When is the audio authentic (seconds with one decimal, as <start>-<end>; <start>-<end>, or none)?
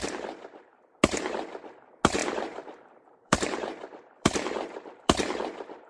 0.0-2.2